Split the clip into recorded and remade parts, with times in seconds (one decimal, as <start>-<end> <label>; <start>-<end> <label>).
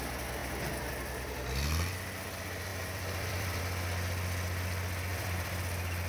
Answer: 0.0-2.7 recorded; 2.7-3.6 remade; 3.6-5.1 recorded; 5.1-5.6 remade; 5.6-6.1 recorded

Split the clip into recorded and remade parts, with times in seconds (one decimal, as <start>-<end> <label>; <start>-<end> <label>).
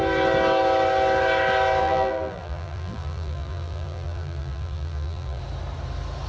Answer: 0.0-1.8 recorded; 1.8-5.4 remade; 5.4-6.3 recorded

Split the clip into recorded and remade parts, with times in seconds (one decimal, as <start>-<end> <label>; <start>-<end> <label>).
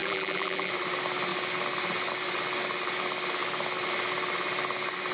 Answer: 0.0-0.7 remade; 0.7-5.1 recorded